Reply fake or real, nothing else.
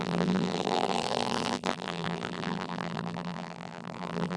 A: fake